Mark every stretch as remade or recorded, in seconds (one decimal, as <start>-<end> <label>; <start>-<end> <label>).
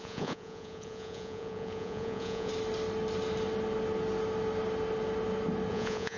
0.0-2.5 remade; 2.5-5.7 recorded; 5.7-6.2 remade